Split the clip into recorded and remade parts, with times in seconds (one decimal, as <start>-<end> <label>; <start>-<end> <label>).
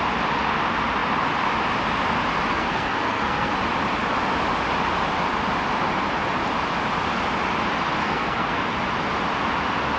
0.0-2.5 recorded; 2.5-3.5 remade; 3.5-8.0 recorded; 8.0-8.6 remade; 8.6-10.0 recorded